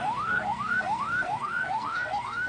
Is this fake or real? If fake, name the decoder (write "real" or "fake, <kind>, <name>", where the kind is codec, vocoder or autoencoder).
fake, codec, SNAC